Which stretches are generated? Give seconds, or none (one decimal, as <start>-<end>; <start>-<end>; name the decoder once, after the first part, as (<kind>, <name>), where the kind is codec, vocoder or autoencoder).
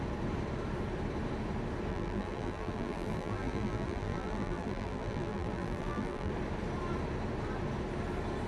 1.9-6.3 (vocoder, BigVGAN v2)